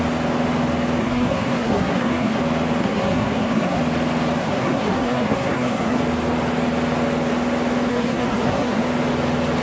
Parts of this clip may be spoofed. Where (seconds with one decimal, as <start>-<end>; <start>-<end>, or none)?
1.0-2.4; 2.8-3.8; 4.4-6.0; 7.9-8.8